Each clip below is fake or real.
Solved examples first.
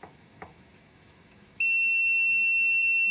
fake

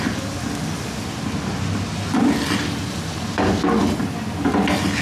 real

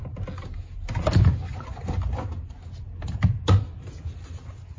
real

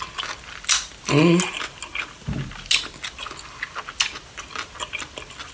real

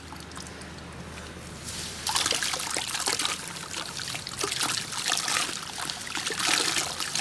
real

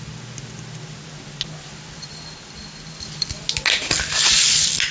real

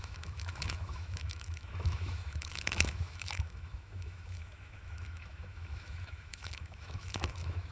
fake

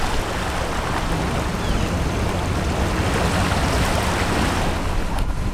real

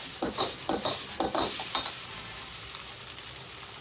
real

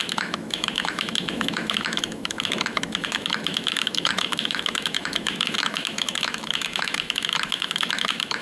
fake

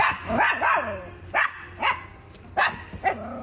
real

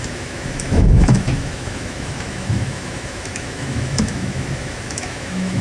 fake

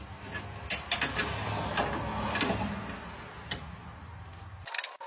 real